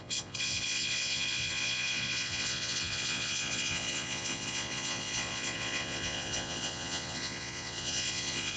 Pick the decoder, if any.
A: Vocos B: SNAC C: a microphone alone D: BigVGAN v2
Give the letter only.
A